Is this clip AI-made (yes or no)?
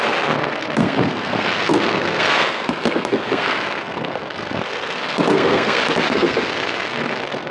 yes